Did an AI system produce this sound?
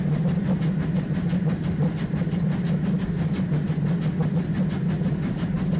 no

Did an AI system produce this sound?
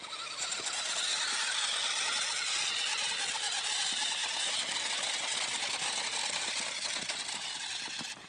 no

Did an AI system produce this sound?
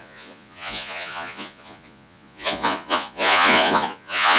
yes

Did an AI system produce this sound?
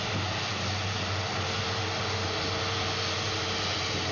no